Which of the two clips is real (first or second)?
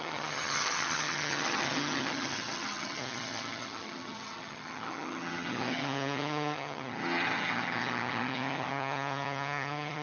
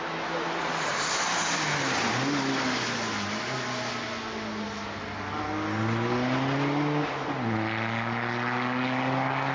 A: second